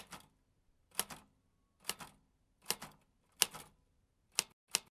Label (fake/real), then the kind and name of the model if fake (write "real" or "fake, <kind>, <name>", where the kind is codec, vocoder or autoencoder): real